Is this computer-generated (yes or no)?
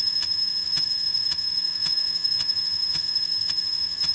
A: yes